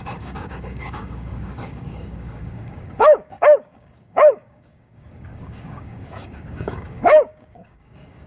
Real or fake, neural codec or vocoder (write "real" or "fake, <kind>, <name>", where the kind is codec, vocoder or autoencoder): fake, codec, DAC